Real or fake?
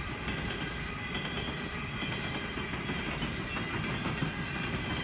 real